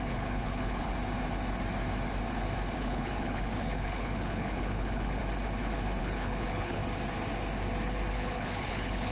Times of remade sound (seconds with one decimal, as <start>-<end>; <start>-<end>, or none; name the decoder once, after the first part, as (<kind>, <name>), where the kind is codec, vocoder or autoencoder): 0.0-0.9 (codec, HILCodec); 2.8-5.2; 6.0-6.8; 8.1-9.1